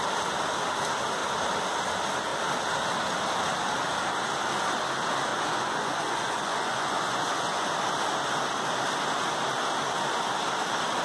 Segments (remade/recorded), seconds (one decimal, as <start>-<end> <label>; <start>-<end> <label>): 0.0-5.3 recorded; 5.3-7.7 remade; 7.7-11.0 recorded